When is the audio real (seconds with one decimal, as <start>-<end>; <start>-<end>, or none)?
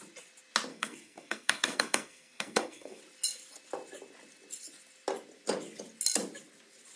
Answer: 0.0-0.7; 3.0-7.0